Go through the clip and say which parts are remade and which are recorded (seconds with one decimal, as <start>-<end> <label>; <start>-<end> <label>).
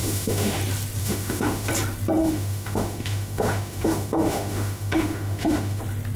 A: 0.0-0.6 remade; 0.6-1.0 recorded; 1.0-1.7 remade; 1.7-2.2 recorded; 2.2-5.8 remade; 5.8-6.2 recorded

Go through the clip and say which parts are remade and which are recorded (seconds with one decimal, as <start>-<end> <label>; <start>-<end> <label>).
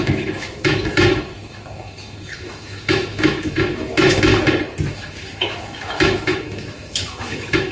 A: 0.0-4.3 remade; 4.3-4.9 recorded; 4.9-7.7 remade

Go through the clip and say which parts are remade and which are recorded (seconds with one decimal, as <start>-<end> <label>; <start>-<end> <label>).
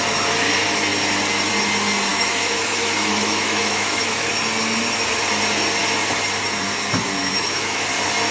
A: 0.0-2.1 recorded; 2.1-4.3 remade; 4.3-7.2 recorded; 7.2-7.9 remade; 7.9-8.3 recorded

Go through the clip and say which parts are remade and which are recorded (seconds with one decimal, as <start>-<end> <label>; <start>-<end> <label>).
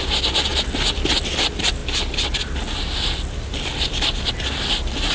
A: 0.0-5.1 recorded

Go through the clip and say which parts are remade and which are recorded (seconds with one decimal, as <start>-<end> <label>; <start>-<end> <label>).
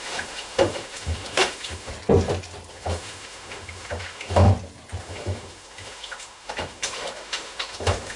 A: 0.0-1.9 remade; 1.9-2.7 recorded; 2.7-4.5 remade; 4.5-5.0 recorded; 5.0-8.2 remade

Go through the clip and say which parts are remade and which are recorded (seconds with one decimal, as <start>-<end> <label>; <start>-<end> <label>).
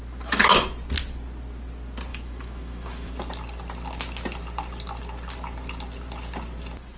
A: 0.0-2.1 recorded; 2.1-3.1 remade; 3.1-7.0 recorded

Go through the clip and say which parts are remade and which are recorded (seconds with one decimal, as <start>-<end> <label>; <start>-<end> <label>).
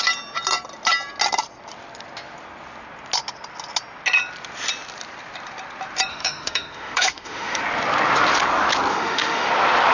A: 0.0-6.1 recorded; 6.1-7.6 remade; 7.6-8.9 recorded; 8.9-9.5 remade; 9.5-9.9 recorded